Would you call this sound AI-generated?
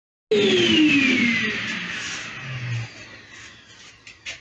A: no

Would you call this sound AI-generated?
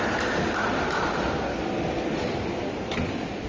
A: no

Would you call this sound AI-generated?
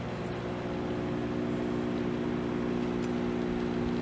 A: no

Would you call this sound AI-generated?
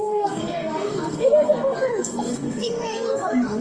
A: yes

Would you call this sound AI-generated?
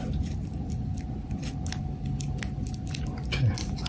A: no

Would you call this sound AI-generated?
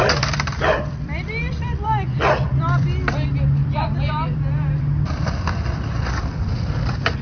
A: yes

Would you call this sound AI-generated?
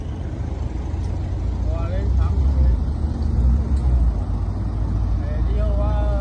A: no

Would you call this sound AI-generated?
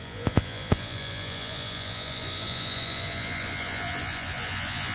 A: yes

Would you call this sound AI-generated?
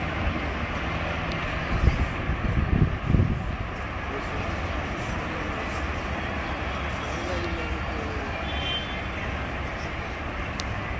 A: no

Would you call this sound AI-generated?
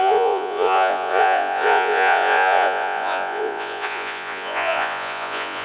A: yes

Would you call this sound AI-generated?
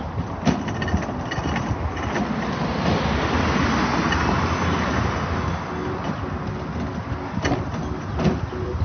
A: no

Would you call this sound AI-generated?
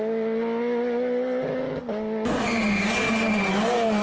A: no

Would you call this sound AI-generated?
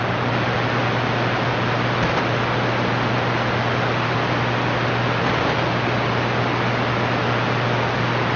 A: no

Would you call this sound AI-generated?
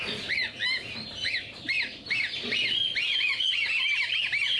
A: no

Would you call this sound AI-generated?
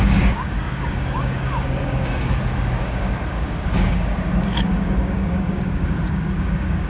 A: yes